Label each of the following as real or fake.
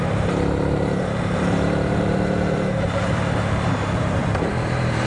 fake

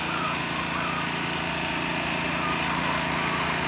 real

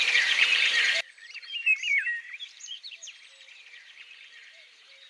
fake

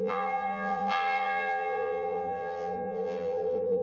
fake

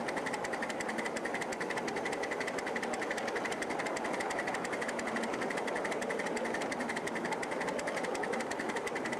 real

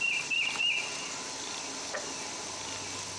real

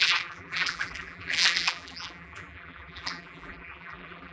fake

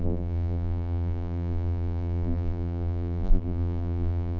fake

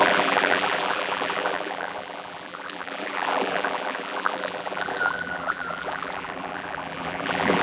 fake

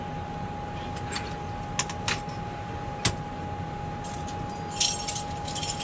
real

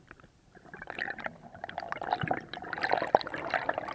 fake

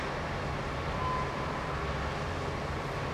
real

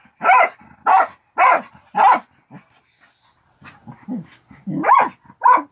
real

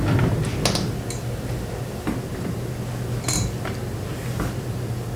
real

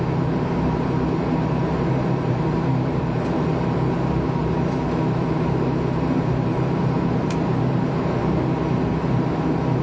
fake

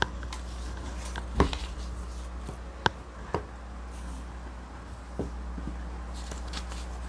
real